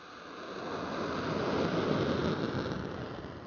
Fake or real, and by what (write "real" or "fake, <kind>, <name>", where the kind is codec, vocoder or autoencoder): real